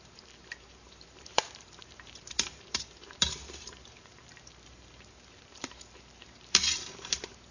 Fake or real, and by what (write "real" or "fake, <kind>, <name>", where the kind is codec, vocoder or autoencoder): fake, vocoder, BigVGAN v2